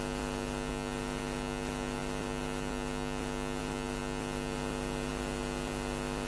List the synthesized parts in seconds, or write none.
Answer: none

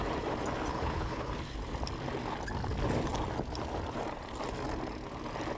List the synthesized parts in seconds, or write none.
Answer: 0.7-1.3 (codec, HILCodec)

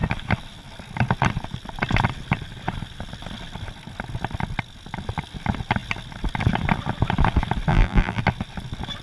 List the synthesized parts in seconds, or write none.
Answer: 7.7-8.2 (vocoder, BigVGAN v2)

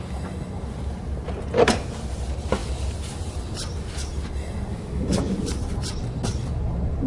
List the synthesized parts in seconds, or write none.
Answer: 4.7-5.3 (autoencoder, DAC-VAE)

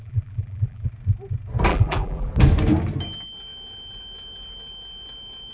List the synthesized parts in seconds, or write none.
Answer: 0.0-0.9 (vocoder, BigVGAN v2); 1.7-2.3

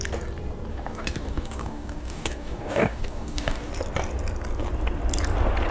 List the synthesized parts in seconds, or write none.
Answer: 0.7-3.7 (codec, DAC)

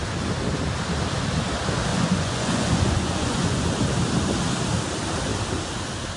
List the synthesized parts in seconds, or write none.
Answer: 1.9-3.7 (vocoder, Vocos)